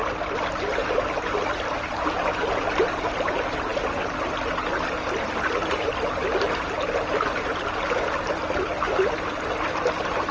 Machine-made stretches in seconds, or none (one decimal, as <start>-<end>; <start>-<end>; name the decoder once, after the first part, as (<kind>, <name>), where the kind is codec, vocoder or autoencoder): none